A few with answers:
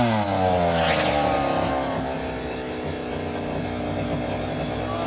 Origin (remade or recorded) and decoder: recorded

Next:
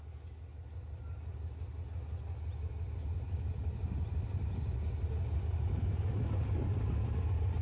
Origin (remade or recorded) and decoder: recorded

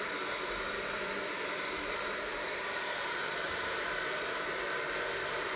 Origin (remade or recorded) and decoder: remade, vocoder, BigVGAN v2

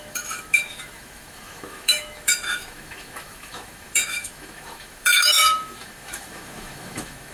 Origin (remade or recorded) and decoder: remade, autoencoder, DAC-VAE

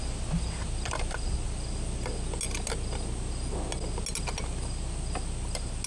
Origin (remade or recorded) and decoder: recorded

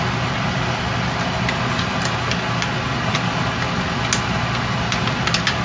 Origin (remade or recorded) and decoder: recorded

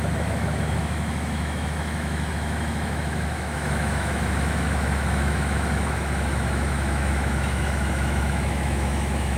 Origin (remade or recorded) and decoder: remade, autoencoder, DAC-VAE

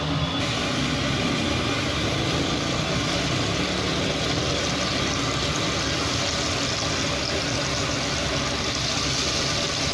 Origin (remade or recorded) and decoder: recorded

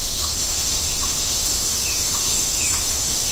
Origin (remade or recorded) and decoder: remade, autoencoder, DAC-VAE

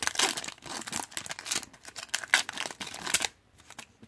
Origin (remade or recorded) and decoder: recorded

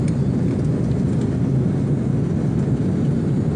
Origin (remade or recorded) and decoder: recorded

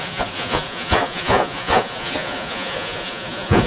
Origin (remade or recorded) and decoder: remade, vocoder, Vocos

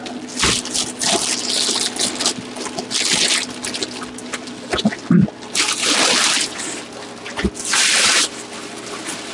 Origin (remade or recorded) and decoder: recorded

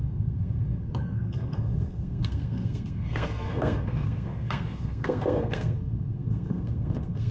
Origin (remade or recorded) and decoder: remade, codec, SNAC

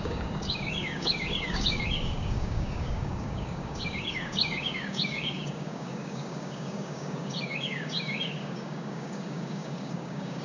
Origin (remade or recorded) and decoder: remade, codec, DAC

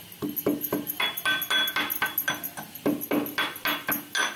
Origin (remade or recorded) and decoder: recorded